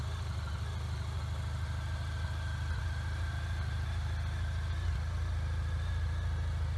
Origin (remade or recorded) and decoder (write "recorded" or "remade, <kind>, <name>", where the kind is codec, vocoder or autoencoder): recorded